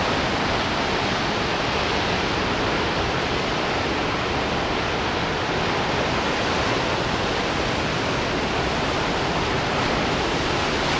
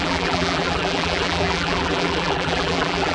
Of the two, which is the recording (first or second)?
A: first